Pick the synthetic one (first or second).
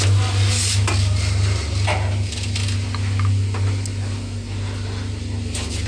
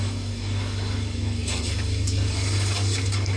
second